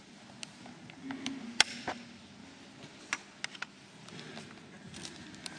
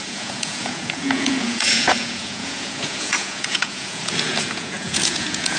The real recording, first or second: first